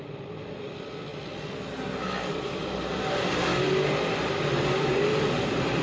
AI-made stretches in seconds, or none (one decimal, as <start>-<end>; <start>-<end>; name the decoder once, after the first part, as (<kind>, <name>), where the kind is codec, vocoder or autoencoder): none